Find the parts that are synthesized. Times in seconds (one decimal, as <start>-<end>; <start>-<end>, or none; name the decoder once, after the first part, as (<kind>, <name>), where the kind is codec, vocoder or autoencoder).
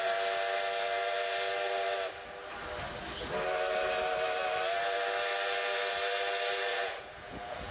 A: 6.7-7.7 (vocoder, Vocos)